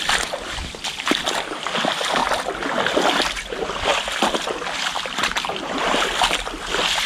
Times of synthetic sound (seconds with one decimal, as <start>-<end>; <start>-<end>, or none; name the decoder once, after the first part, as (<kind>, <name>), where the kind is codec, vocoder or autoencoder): none